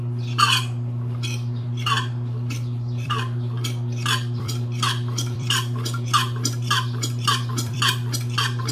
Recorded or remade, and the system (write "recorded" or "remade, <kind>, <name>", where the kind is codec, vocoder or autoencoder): remade, vocoder, BigVGAN v2